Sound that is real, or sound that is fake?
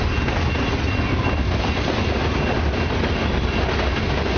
real